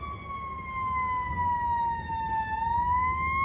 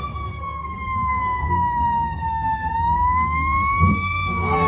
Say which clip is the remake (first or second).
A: second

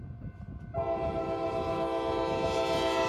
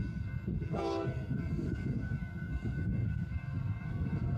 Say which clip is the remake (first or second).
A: second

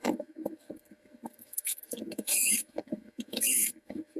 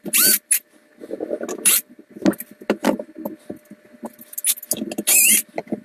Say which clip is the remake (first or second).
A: first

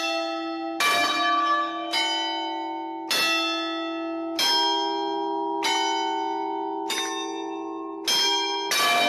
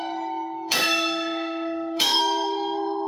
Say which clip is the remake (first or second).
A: second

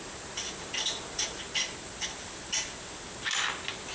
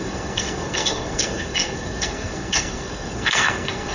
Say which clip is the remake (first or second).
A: second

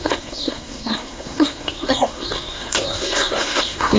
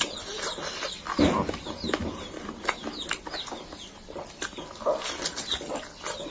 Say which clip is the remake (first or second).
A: first